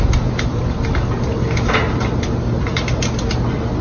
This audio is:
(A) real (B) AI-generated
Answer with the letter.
A